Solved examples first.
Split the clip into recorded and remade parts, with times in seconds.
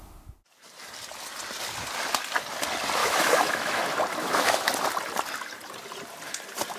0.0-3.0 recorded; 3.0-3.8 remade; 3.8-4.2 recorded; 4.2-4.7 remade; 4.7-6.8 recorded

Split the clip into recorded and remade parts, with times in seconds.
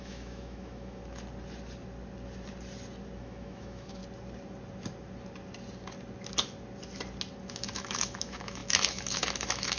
0.0-1.0 remade; 1.0-3.2 recorded; 3.2-4.0 remade; 4.0-7.5 recorded; 7.5-9.8 remade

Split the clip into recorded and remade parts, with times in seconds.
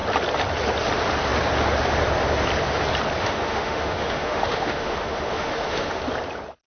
0.0-3.2 recorded; 3.2-6.0 remade; 6.0-6.7 recorded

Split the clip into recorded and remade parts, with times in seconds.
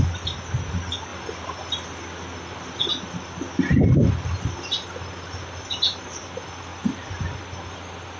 0.0-8.2 recorded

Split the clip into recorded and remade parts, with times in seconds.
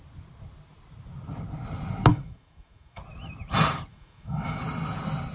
0.0-2.1 recorded; 2.1-3.0 remade; 3.0-3.9 recorded; 3.9-4.6 remade; 4.6-5.3 recorded